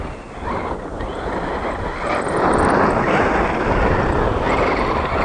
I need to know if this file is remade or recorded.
recorded